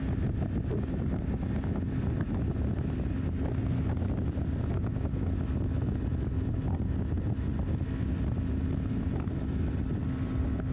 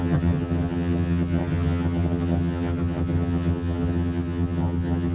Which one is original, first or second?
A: first